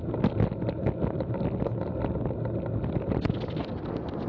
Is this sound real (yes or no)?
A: yes